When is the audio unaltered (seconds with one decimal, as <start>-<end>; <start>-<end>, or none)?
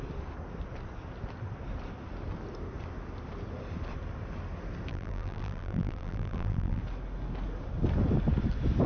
0.0-4.9; 6.8-8.9